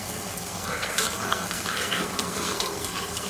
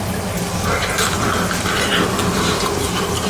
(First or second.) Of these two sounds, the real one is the second